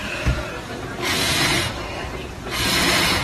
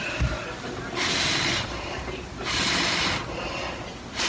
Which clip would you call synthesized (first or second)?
first